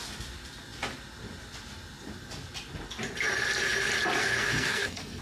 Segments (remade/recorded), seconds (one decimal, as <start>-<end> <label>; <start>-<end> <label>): 0.0-4.2 recorded; 4.2-5.2 remade